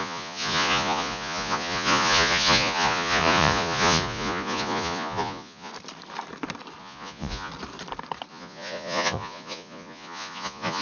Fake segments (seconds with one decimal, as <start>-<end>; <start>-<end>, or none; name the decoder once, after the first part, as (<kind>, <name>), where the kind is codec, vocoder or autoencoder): 0.0-5.7 (vocoder, Vocos); 6.8-7.5; 8.3-10.8